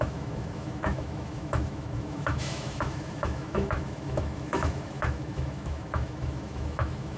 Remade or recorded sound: remade